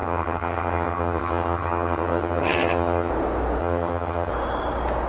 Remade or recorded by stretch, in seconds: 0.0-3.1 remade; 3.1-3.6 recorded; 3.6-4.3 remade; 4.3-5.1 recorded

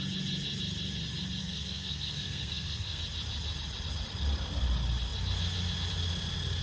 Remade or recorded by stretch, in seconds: 0.0-1.4 recorded; 1.4-3.0 remade; 3.0-6.6 recorded

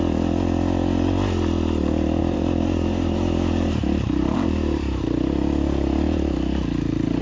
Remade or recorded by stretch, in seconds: 0.0-2.2 recorded; 2.2-5.0 remade; 5.0-7.2 recorded

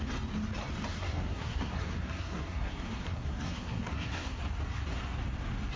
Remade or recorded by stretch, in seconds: 0.0-0.9 recorded; 0.9-4.4 remade; 4.4-5.8 recorded

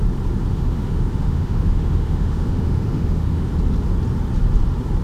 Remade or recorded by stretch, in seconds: 0.0-0.5 recorded; 0.5-3.5 remade; 3.5-5.0 recorded

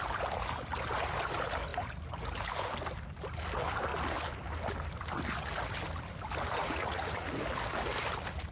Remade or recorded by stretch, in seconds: 0.0-6.6 recorded; 6.6-7.3 remade; 7.3-8.5 recorded

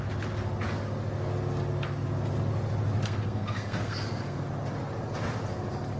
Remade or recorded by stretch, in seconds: 0.0-3.0 recorded; 3.0-4.4 remade; 4.4-6.0 recorded

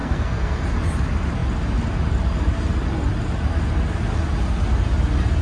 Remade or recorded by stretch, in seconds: 0.0-0.6 remade; 0.6-5.4 recorded